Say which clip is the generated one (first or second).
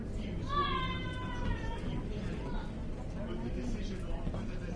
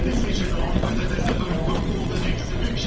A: second